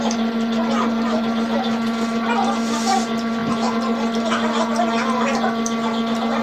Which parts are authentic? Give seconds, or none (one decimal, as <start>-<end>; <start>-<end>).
0.0-6.4